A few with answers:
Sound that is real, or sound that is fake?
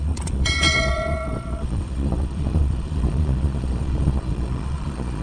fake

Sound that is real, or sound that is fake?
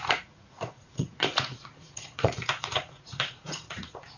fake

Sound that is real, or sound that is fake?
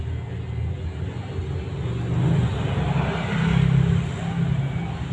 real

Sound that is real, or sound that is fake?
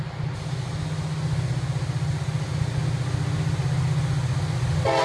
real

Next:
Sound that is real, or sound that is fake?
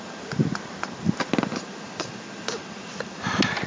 real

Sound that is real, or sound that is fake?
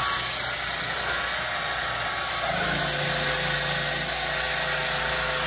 real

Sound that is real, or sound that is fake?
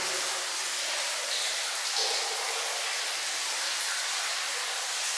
real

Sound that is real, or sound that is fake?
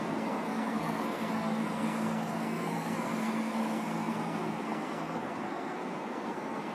fake